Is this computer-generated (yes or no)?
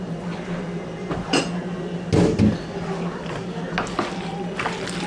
no